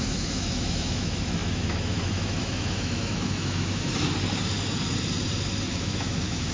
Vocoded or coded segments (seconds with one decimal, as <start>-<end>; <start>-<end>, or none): 0.0-3.9; 5.7-6.5